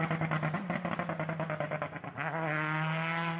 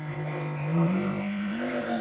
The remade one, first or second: second